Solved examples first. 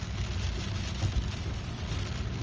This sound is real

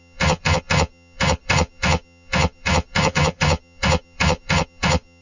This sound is fake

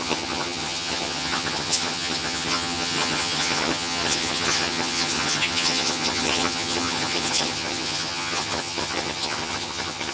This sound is fake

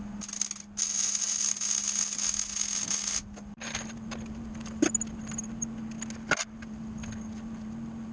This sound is real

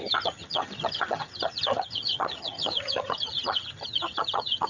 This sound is fake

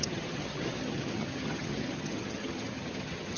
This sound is fake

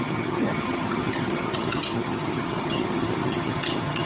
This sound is fake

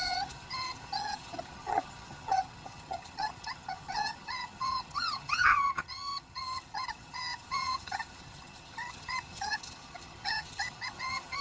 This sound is fake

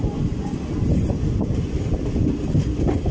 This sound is real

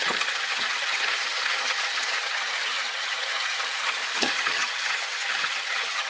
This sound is fake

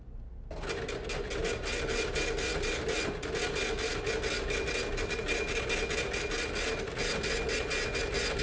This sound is real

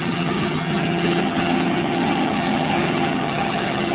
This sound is fake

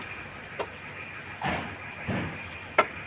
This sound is real